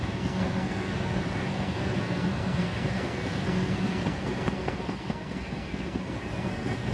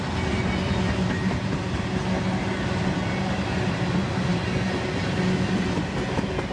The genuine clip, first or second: second